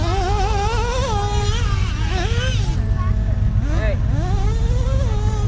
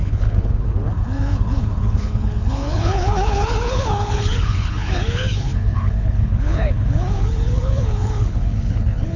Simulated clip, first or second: second